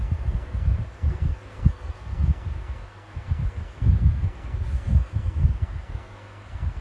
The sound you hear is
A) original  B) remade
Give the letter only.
B